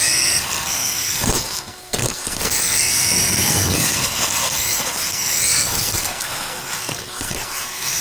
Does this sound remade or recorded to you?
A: remade